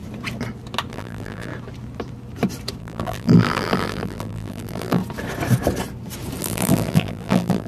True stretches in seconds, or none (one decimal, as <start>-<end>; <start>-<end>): 0.0-0.9; 1.5-2.8; 5.0-6.4